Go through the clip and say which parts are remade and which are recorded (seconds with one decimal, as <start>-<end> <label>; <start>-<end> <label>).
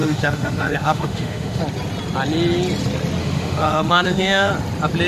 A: 0.0-1.6 remade; 1.6-3.2 recorded; 3.2-4.5 remade; 4.5-5.1 recorded